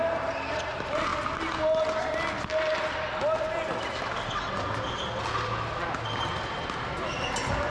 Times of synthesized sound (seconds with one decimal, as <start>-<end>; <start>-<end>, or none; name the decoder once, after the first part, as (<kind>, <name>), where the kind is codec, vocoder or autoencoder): none